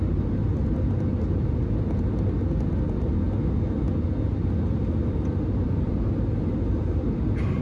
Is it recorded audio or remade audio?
recorded